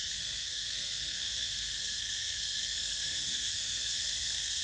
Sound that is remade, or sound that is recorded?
remade